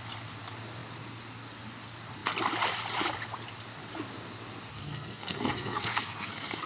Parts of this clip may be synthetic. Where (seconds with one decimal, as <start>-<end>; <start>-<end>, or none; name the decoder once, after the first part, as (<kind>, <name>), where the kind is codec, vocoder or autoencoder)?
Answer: 4.7-6.7 (codec, SNAC)